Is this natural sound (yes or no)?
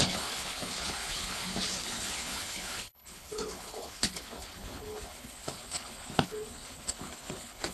no